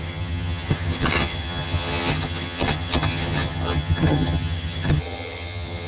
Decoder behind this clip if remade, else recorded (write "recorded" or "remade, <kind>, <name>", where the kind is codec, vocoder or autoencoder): remade, vocoder, HiFi-GAN